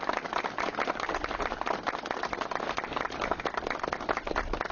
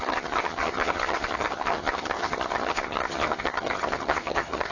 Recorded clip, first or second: first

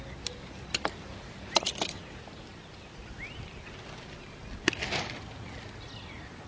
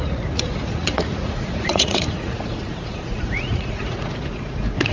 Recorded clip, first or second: first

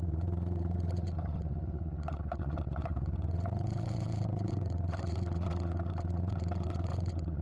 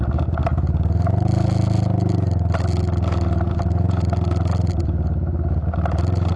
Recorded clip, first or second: second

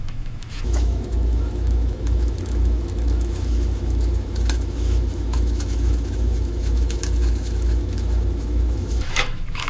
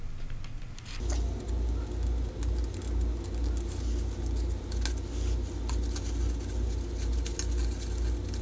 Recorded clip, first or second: second